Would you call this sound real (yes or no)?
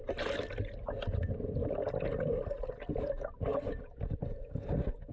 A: yes